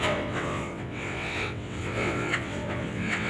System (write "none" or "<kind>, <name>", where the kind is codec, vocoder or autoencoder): vocoder, WaveNeXt